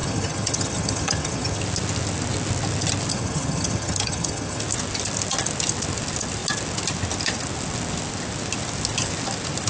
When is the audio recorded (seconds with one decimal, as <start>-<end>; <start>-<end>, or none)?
1.6-3.1; 4.6-9.7